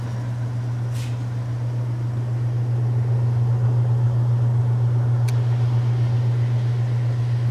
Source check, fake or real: real